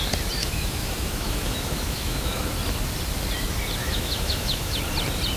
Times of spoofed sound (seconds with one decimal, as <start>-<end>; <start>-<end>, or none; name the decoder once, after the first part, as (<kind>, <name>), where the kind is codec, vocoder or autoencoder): 0.4-2.5 (autoencoder, DAC-VAE); 3.8-4.8